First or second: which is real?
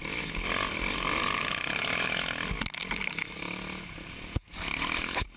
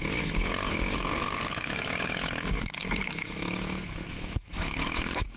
first